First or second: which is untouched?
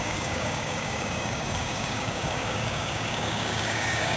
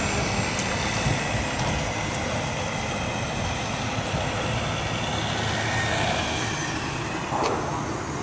second